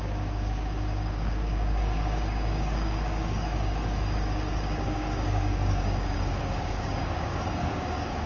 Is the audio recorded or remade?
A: remade